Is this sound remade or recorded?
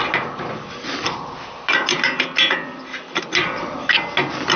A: recorded